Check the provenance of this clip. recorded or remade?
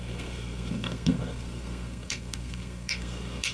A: remade